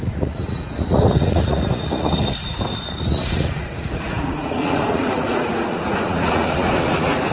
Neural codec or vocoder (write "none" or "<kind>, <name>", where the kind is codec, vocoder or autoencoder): vocoder, Vocos